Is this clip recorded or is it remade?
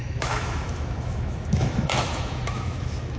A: remade